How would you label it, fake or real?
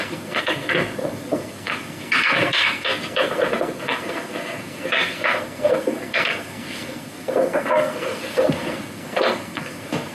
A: fake